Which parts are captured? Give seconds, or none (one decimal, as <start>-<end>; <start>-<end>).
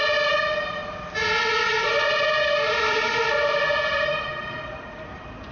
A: 0.8-1.7